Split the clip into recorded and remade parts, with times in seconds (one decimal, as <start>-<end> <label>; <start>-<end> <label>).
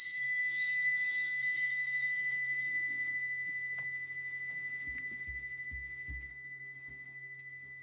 0.0-2.7 remade; 2.7-6.3 recorded; 6.3-7.8 remade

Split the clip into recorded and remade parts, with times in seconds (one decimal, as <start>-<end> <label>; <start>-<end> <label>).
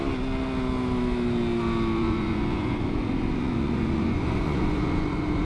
0.0-2.0 recorded; 2.0-5.4 remade